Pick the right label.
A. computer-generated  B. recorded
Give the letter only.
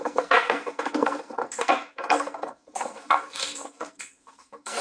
A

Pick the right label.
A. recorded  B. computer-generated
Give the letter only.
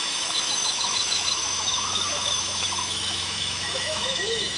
B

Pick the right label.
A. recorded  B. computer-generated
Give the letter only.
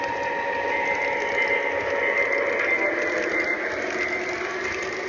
A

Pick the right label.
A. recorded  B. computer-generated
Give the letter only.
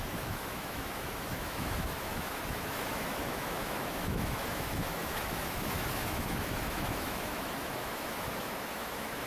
B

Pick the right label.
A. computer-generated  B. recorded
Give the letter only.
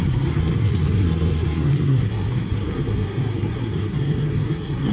A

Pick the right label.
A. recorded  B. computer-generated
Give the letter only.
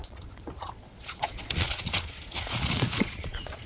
B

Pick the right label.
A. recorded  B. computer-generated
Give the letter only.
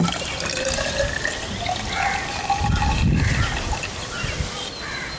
A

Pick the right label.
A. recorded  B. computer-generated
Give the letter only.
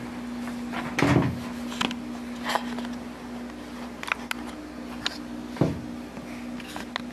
A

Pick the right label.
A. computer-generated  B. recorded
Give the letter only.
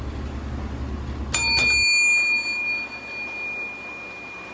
B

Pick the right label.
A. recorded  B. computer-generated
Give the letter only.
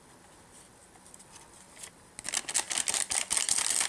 A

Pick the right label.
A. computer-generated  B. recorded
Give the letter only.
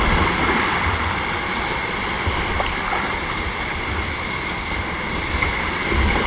B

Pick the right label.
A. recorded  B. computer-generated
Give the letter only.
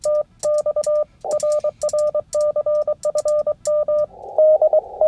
A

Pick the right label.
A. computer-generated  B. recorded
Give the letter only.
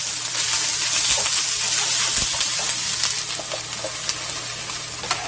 B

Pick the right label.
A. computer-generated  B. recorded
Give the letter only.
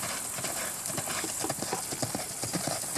B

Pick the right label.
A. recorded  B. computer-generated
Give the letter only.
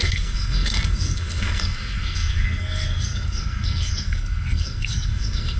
B